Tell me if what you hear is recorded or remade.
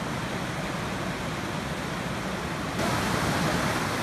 recorded